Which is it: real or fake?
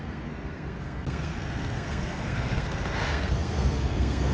fake